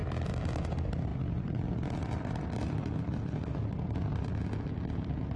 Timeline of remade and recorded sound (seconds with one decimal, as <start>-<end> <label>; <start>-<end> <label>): 0.0-1.1 recorded; 1.1-4.3 remade; 4.3-5.4 recorded